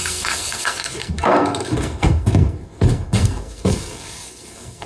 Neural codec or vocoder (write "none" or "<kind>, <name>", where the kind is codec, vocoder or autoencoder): codec, SNAC